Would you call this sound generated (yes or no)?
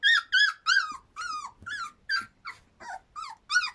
no